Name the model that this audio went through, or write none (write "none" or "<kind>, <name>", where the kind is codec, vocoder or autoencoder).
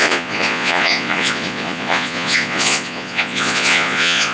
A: vocoder, Vocos